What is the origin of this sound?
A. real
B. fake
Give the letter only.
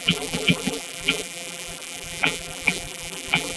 B